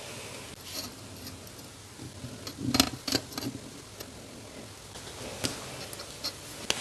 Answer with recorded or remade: recorded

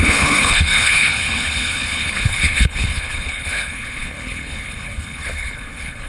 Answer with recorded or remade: remade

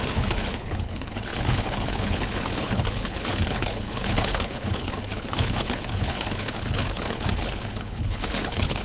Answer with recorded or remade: remade